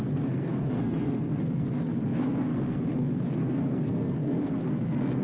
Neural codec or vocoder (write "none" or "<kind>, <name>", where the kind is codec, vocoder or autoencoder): codec, SNAC